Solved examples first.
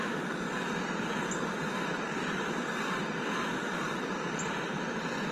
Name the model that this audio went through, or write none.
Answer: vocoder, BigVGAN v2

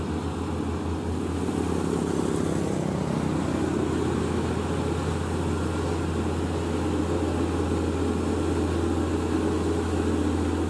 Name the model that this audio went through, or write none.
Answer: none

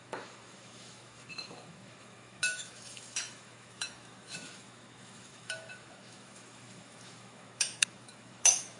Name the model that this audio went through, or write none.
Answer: autoencoder, DAC-VAE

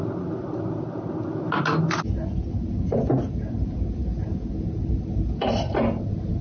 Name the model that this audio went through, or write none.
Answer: none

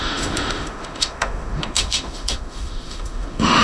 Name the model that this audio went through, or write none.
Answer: autoencoder, DAC-VAE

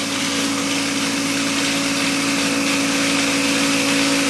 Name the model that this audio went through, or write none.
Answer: none